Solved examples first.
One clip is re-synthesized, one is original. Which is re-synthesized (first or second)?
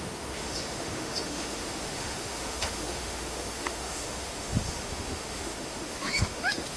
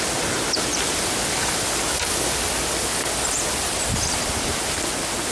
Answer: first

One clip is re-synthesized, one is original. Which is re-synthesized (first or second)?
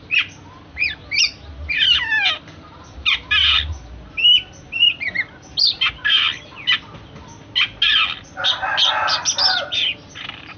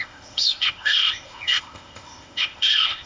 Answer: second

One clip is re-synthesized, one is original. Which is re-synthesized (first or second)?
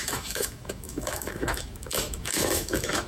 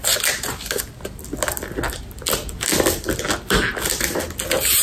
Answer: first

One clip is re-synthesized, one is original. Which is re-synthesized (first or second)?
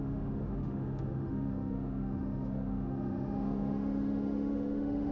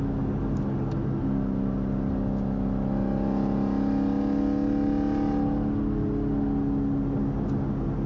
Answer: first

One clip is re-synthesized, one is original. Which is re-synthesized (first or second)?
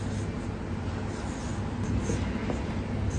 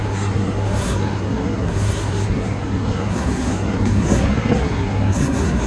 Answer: second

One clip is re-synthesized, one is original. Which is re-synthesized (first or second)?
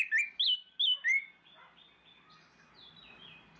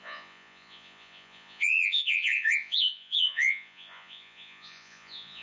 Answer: second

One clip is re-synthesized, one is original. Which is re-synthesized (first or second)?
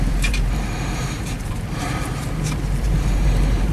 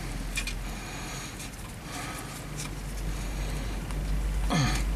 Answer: first